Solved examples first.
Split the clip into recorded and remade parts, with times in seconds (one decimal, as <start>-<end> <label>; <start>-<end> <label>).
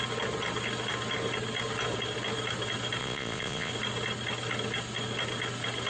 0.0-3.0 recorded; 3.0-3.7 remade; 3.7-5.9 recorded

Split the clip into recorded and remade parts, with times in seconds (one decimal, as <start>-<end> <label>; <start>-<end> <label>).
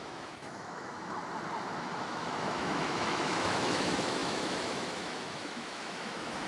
0.0-1.2 remade; 1.2-1.8 recorded; 1.8-6.5 remade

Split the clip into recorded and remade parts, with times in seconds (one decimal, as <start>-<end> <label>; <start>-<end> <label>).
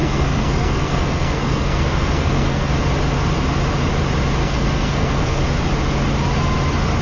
0.0-2.7 remade; 2.7-4.4 recorded; 4.4-5.4 remade; 5.4-7.0 recorded